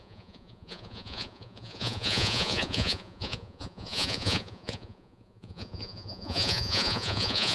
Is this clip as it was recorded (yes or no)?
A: no